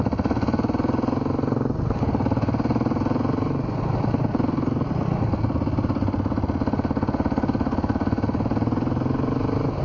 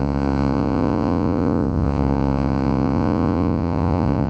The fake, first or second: second